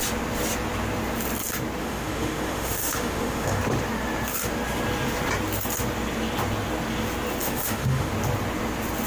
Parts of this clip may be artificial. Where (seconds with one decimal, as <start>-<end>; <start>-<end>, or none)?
1.8-3.6; 7.4-8.1